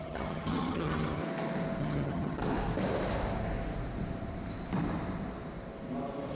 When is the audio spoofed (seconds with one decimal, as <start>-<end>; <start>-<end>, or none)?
0.0-1.2; 1.8-2.4